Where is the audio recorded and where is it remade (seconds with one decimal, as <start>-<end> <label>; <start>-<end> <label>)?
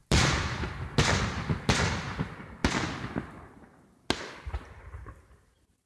0.0-0.7 remade; 0.7-5.9 recorded